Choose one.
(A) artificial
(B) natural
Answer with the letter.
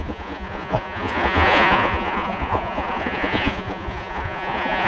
A